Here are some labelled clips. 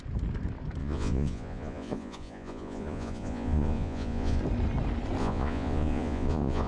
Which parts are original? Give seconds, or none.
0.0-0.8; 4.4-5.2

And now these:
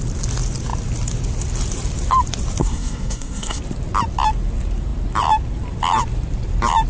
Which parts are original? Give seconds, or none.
0.0-2.6; 3.6-6.9